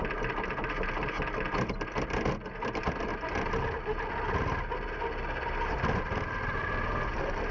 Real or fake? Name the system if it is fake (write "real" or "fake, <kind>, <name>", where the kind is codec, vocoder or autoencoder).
real